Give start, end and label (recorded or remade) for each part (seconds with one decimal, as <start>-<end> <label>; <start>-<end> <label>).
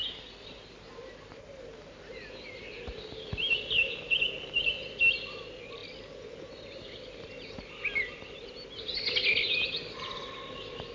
0.0-10.9 recorded